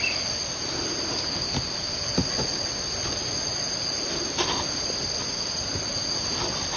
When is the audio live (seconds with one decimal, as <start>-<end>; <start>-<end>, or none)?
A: 0.0-6.8